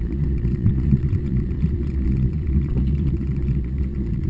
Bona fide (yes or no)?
no